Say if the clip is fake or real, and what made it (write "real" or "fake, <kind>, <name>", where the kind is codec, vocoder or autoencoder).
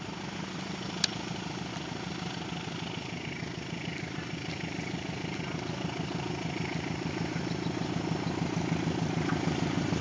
real